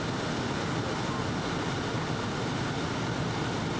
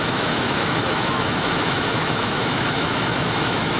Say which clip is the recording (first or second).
first